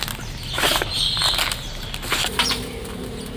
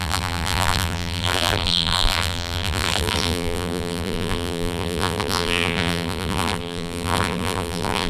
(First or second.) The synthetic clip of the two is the second